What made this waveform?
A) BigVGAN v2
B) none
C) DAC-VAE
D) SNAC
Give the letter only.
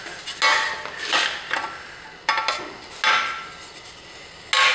B